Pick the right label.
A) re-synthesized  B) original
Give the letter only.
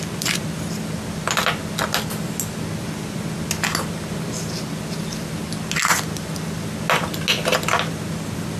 B